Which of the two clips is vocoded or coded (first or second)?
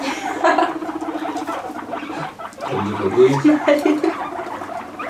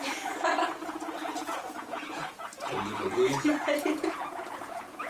second